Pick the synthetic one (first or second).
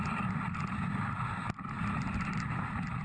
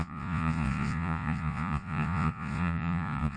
second